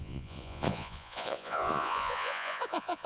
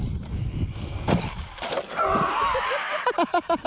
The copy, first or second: first